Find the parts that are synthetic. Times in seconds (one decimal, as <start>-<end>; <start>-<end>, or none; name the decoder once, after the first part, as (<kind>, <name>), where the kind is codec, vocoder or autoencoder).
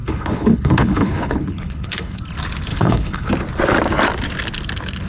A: 0.0-2.2 (codec, HILCodec); 2.7-3.3